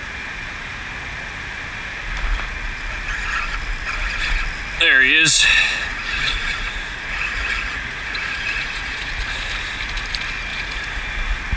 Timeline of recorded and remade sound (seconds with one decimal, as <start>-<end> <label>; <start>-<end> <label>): 0.0-5.4 recorded; 5.4-9.1 remade; 9.1-10.5 recorded; 10.5-11.0 remade; 11.0-11.6 recorded